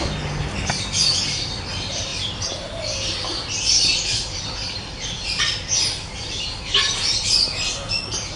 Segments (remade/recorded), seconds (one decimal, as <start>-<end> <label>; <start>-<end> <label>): 0.0-2.1 recorded; 2.1-5.4 remade; 5.4-8.4 recorded